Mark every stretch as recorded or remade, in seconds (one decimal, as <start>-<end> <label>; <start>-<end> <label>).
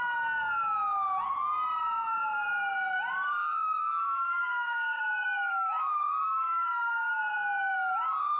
0.0-3.4 recorded; 3.4-7.2 remade; 7.2-8.4 recorded